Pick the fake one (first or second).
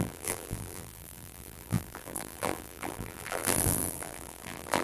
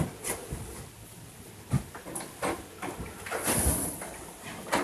first